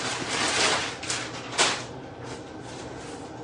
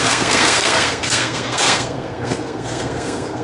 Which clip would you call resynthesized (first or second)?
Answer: second